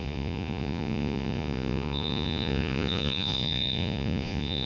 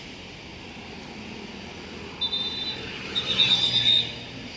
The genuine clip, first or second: second